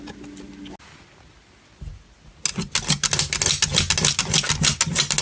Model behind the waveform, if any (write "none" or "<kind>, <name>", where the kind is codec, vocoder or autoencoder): none